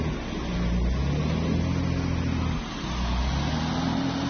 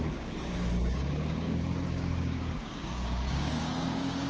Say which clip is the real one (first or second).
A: first